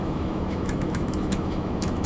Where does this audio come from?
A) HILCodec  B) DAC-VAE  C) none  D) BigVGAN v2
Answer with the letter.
B